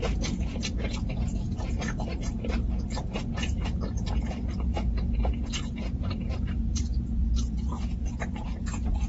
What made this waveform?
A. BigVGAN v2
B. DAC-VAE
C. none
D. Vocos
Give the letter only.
D